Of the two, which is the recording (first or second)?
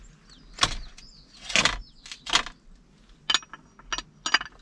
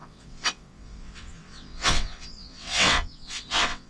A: first